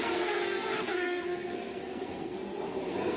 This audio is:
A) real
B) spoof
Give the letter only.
B